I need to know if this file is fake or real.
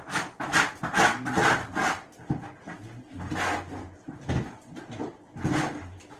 real